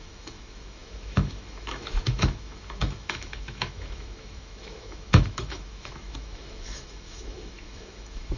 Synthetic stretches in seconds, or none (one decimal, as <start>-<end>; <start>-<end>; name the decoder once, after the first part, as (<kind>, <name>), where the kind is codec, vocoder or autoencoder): 0.0-8.4 (autoencoder, DAC-VAE)